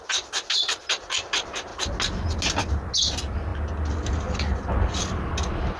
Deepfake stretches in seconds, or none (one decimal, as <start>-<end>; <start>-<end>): none